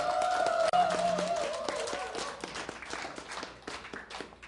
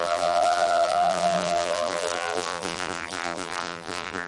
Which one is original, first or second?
first